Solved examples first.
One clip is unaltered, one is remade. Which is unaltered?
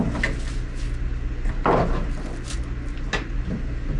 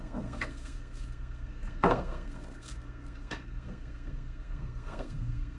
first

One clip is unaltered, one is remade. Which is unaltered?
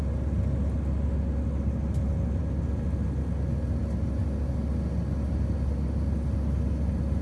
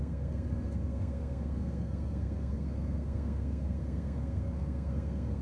first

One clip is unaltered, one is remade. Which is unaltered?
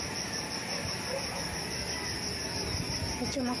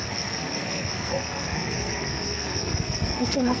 first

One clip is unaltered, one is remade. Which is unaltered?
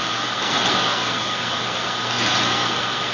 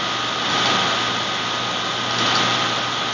second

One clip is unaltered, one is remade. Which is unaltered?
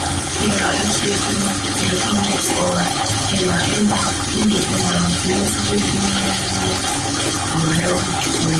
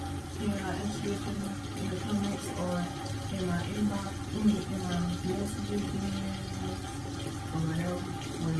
second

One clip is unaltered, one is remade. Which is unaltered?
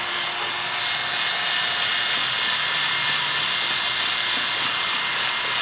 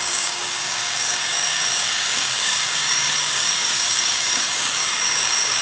first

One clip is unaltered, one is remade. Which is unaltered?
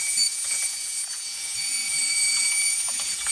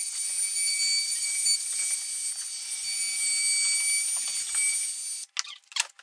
second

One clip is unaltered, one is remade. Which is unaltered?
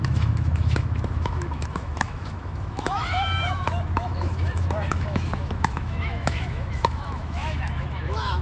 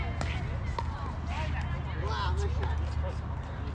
second